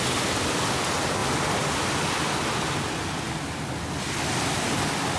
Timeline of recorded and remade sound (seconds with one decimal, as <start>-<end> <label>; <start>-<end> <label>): 0.0-5.2 recorded